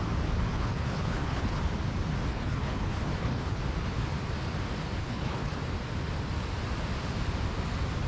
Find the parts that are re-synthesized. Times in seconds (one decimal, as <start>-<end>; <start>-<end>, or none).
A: 0.5-1.6; 2.3-3.6; 5.0-5.6